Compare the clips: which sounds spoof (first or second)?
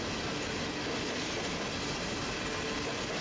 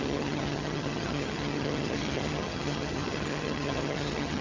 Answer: second